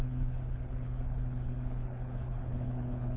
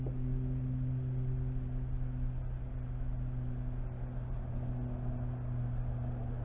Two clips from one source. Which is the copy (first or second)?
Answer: first